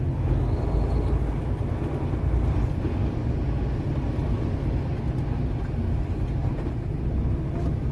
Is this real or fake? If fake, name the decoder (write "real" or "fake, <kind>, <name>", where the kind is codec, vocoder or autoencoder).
real